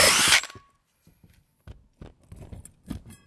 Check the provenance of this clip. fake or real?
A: real